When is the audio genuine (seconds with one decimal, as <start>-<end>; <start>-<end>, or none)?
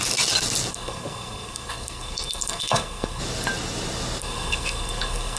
0.0-0.7; 3.2-4.2